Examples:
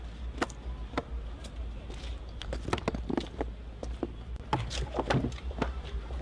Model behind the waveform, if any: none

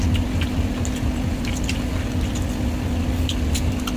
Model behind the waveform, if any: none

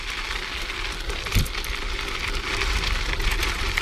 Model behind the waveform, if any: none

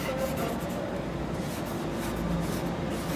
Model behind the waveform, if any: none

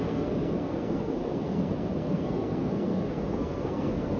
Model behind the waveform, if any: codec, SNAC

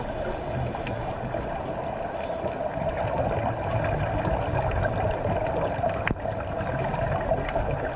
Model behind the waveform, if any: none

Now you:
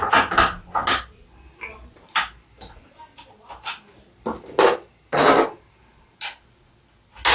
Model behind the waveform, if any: none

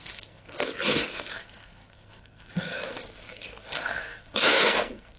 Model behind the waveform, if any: codec, SNAC